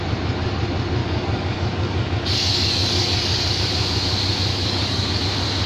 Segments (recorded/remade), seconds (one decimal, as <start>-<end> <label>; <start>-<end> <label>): 0.0-1.0 recorded; 1.0-3.6 remade; 3.6-4.5 recorded; 4.5-5.2 remade; 5.2-5.7 recorded